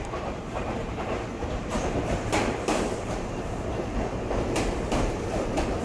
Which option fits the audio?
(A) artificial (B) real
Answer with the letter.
A